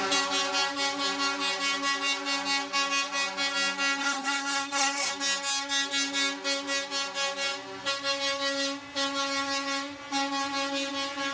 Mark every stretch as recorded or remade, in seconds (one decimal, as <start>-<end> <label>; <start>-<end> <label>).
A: 0.0-4.0 recorded; 4.0-5.1 remade; 5.1-11.3 recorded